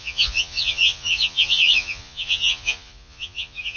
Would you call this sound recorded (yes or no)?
no